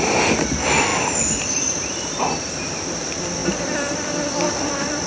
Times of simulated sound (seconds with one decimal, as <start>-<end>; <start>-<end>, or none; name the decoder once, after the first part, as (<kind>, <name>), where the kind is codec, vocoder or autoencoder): none